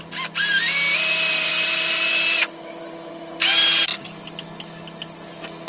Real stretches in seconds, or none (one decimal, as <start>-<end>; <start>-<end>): 0.0-5.7